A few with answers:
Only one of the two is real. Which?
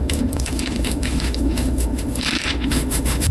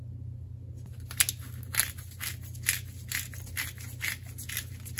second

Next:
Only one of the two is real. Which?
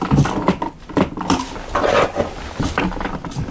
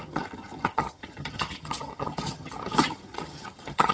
first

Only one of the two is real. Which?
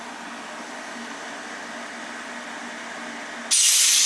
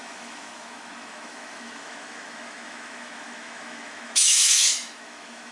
first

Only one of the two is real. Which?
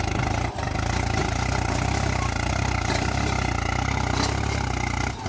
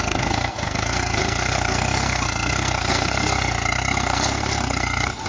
first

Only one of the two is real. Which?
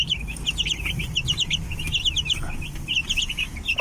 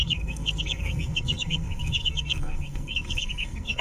first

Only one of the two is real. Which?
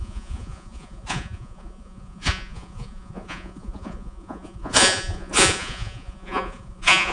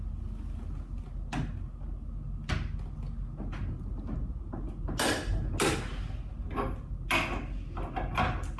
second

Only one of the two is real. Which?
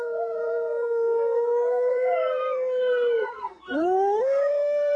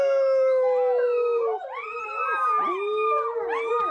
second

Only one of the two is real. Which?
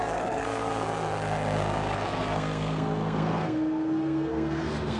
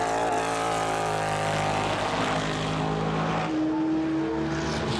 second